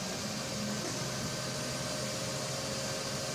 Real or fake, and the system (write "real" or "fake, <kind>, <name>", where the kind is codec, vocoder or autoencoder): real